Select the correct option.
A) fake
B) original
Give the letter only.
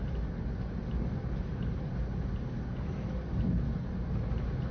B